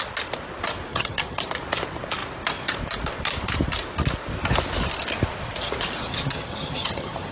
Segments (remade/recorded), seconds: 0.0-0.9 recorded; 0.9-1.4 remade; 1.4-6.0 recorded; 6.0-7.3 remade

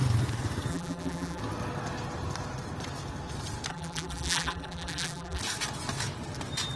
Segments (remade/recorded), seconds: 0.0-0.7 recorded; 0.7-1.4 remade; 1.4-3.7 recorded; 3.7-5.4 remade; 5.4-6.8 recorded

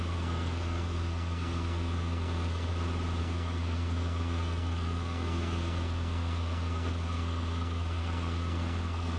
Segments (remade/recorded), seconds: 0.0-2.7 remade; 2.7-3.2 recorded; 3.2-9.2 remade

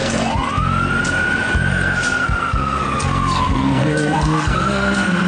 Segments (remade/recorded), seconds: 0.0-0.5 remade; 0.5-1.7 recorded; 1.7-5.3 remade